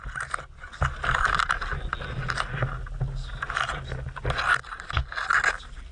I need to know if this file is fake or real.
real